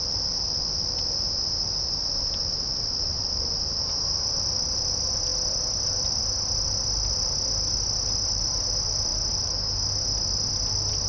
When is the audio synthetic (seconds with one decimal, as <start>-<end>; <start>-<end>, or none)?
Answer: none